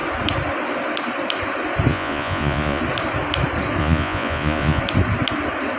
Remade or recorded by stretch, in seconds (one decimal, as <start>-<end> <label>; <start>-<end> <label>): 0.0-1.9 recorded; 1.9-2.8 remade; 2.8-3.8 recorded; 3.8-4.8 remade; 4.8-5.8 recorded